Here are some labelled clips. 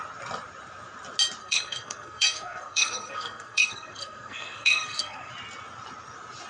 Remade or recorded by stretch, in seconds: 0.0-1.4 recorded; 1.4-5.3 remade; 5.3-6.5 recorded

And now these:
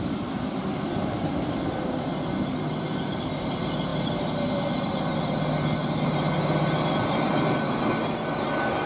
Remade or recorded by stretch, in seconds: 0.0-8.9 recorded

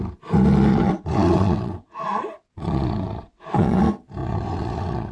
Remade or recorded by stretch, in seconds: 0.0-0.7 recorded; 0.7-3.8 remade; 3.8-4.2 recorded; 4.2-5.1 remade

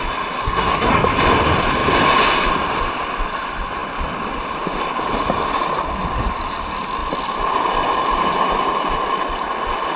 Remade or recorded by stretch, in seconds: 0.0-0.4 recorded; 0.4-0.9 remade; 0.9-10.0 recorded

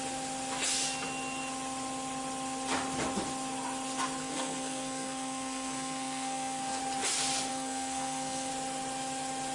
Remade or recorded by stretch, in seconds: 0.0-4.2 recorded; 4.2-6.8 remade; 6.8-7.5 recorded; 7.5-8.5 remade; 8.5-9.5 recorded

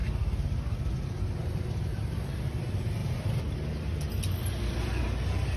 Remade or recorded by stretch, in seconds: 0.0-1.9 recorded; 1.9-2.5 remade; 2.5-5.6 recorded

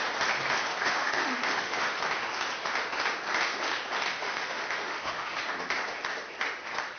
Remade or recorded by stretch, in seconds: 0.0-0.7 recorded; 0.7-2.0 remade; 2.0-4.1 recorded; 4.1-5.4 remade; 5.4-7.0 recorded